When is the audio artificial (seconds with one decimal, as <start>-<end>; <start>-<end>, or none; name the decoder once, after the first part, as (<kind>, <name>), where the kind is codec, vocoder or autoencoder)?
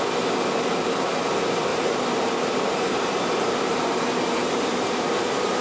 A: 1.7-4.9 (vocoder, BigVGAN v2)